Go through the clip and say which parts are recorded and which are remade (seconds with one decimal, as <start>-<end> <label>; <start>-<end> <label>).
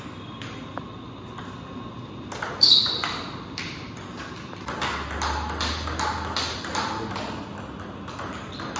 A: 0.0-3.0 recorded; 3.0-3.9 remade; 3.9-8.8 recorded